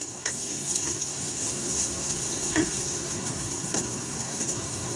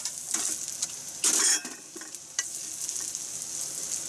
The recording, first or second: second